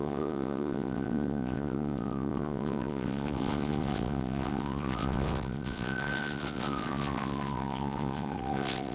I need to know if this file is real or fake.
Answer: fake